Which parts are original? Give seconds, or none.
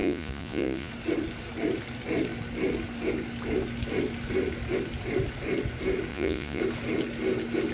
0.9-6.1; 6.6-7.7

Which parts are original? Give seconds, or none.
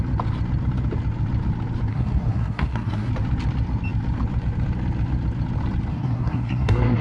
0.0-1.9; 3.1-5.9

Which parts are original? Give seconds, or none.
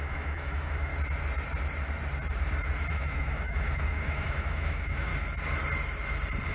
0.9-2.9; 5.1-6.5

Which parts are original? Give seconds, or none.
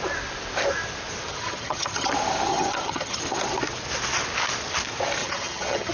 0.0-1.3; 2.1-2.5; 3.2-5.2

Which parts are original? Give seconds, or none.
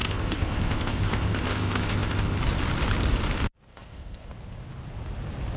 2.4-3.7; 4.3-5.6